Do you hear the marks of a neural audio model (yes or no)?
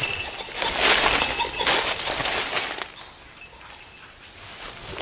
no